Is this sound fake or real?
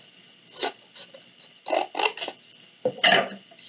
real